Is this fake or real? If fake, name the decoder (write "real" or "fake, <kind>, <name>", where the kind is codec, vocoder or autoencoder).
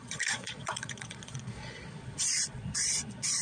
fake, vocoder, Vocos